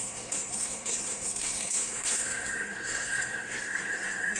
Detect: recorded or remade remade